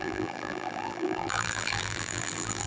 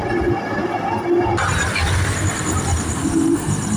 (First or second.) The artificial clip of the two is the first